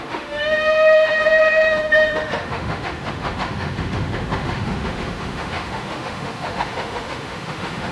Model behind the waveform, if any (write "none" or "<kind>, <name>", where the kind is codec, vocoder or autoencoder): autoencoder, DAC-VAE